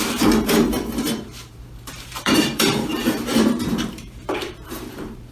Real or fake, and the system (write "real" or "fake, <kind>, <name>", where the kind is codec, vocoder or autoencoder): fake, vocoder, BigVGAN v2